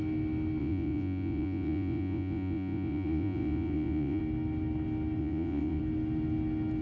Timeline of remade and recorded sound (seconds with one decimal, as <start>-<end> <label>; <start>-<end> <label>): 0.0-0.6 recorded; 0.6-4.2 remade; 4.2-5.2 recorded; 5.2-5.8 remade; 5.8-6.8 recorded